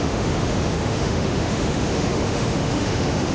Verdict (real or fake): fake